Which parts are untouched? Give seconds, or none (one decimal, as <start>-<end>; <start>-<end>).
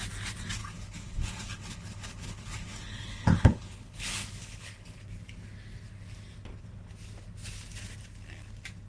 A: 0.0-0.6; 5.0-8.9